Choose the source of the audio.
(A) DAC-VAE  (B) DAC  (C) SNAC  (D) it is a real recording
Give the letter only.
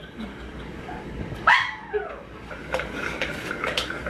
B